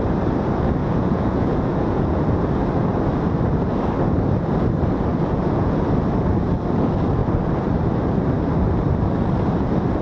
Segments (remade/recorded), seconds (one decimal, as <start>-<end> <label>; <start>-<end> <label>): 0.0-0.8 recorded; 0.8-2.5 remade; 2.5-5.1 recorded; 5.1-5.8 remade; 5.8-10.0 recorded